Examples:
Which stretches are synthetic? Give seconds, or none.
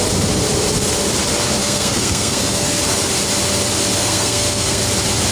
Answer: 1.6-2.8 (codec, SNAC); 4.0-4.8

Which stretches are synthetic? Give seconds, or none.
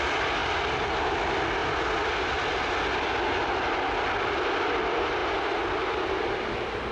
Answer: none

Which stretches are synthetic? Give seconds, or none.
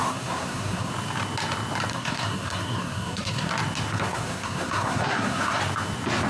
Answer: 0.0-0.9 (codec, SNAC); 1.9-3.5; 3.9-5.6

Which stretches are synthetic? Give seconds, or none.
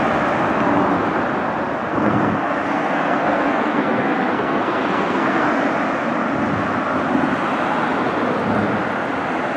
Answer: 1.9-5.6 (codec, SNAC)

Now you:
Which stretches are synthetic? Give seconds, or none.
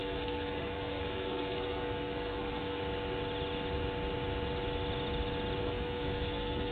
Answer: 0.0-2.8 (codec, SNAC); 5.6-6.7